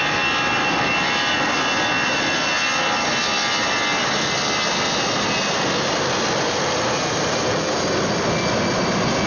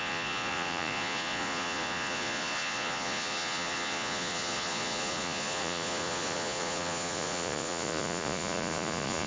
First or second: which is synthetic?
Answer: second